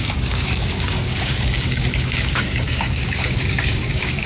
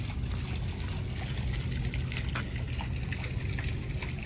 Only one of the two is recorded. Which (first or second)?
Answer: second